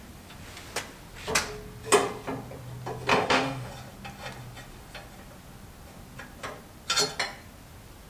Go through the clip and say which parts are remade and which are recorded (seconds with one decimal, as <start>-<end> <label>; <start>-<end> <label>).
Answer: 0.0-3.1 recorded; 3.1-3.7 remade; 3.7-8.1 recorded